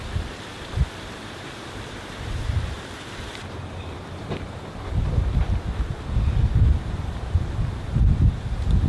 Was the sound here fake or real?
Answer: fake